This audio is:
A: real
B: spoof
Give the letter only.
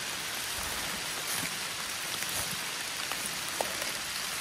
A